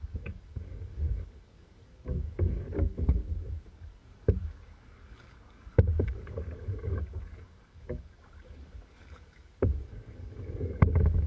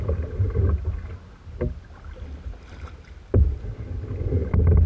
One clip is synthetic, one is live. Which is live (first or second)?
second